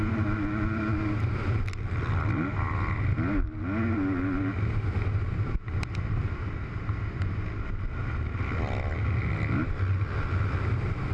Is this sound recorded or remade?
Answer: recorded